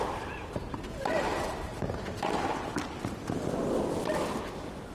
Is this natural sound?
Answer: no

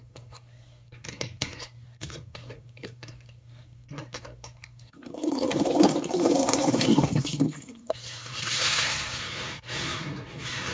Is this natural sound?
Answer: no